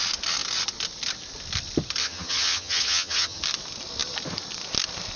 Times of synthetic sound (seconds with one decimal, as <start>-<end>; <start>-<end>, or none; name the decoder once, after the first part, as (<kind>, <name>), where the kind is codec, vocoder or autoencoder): 2.0-3.4 (vocoder, HiFi-GAN)